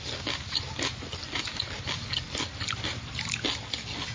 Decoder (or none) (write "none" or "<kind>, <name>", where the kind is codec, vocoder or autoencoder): none